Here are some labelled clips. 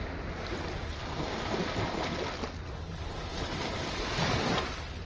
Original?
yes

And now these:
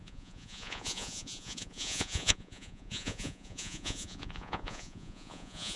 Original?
no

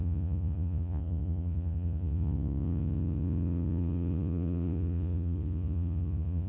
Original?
no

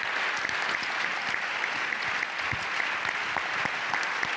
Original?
yes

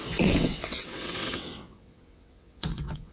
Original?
no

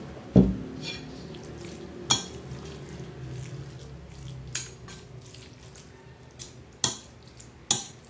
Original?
yes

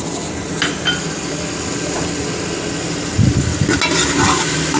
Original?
yes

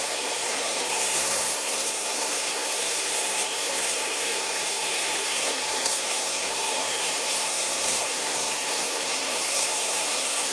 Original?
no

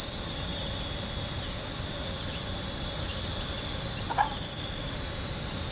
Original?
yes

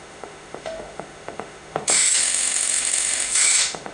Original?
no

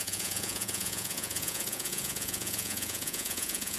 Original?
no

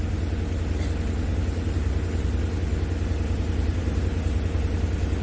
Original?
yes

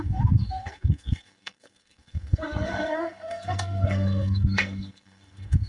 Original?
no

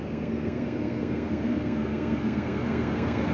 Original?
no